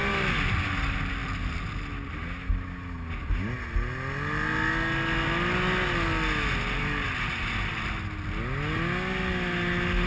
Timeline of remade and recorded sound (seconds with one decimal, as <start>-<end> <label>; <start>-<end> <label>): 0.0-10.1 recorded